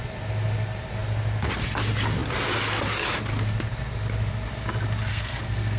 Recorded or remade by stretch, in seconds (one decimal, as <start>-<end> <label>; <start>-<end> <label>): 0.0-5.1 recorded; 5.1-5.8 remade